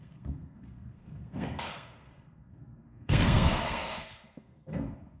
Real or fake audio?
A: fake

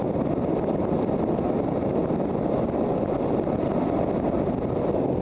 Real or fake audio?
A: real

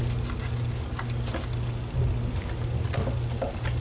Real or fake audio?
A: real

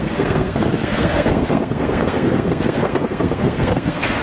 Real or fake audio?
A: fake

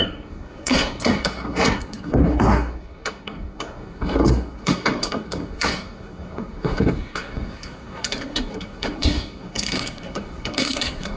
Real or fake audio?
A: fake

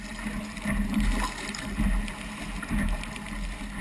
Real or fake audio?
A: real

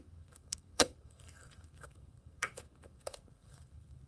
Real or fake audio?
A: fake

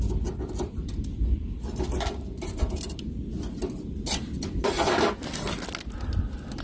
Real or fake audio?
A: real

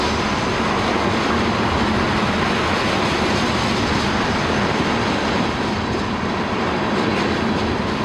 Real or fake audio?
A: real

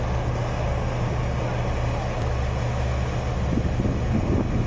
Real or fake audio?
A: real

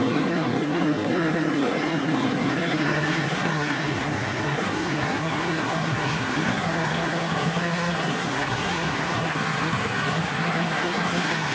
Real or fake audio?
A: fake